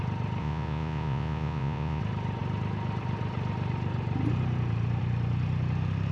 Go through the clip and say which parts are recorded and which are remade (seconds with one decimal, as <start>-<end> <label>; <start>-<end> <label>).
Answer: 0.0-0.4 recorded; 0.4-2.0 remade; 2.0-6.1 recorded